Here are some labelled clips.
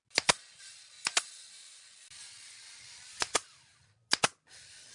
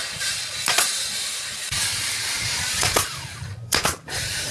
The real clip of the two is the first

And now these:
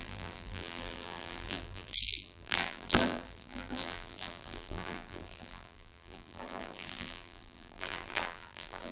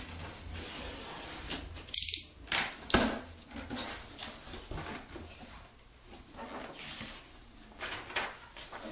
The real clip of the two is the second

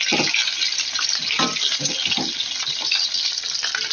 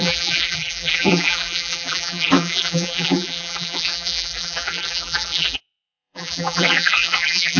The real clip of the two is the first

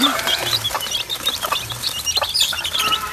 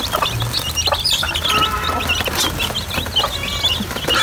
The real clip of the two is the second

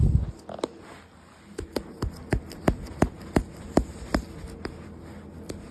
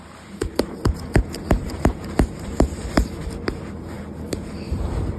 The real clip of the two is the first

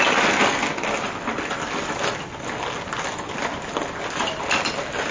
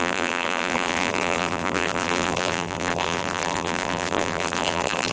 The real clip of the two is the first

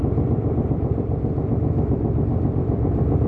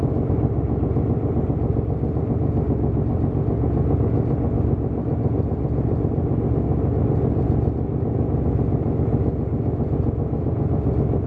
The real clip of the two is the second